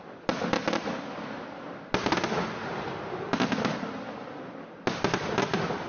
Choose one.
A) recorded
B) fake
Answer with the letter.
A